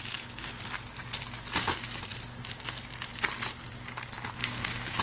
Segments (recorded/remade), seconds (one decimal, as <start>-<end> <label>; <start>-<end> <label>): 0.0-4.4 recorded; 4.4-5.0 remade